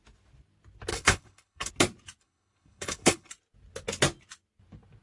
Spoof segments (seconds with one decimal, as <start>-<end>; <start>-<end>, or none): 0.9-1.7; 2.2-3.3